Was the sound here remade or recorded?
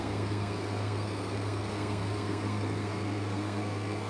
remade